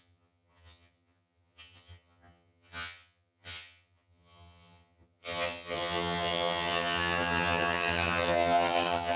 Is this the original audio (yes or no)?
no